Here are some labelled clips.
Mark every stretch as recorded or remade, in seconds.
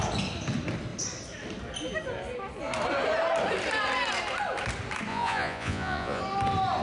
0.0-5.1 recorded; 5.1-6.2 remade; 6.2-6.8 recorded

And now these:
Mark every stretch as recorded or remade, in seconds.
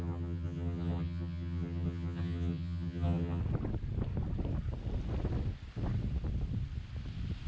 0.0-3.4 remade; 3.4-7.5 recorded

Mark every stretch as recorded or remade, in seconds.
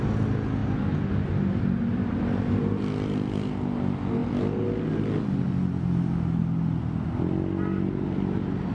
0.0-8.7 recorded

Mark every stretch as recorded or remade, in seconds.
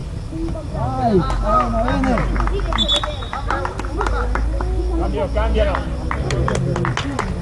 0.0-7.4 recorded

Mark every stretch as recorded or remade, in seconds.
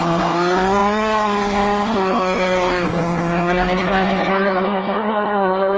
0.0-5.8 remade